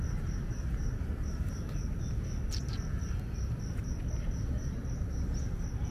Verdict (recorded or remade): recorded